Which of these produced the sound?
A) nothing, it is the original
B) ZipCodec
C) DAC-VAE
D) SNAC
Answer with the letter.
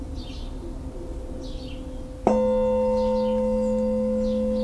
A